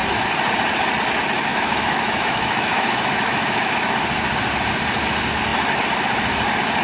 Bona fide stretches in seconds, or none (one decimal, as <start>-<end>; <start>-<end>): 0.0-1.5; 3.9-6.8